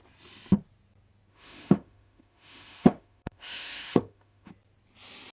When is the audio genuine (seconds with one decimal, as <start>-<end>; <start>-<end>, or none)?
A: 0.0-1.3; 4.5-5.4